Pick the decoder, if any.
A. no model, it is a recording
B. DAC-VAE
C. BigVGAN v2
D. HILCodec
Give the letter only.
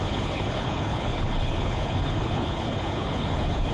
D